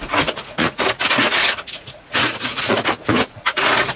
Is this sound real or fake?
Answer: fake